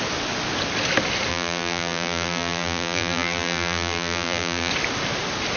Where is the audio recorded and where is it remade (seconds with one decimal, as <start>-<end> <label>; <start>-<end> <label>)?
0.0-1.3 recorded; 1.3-4.7 remade; 4.7-5.6 recorded